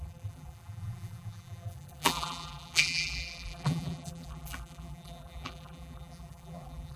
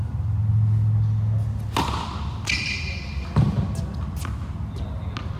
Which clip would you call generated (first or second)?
first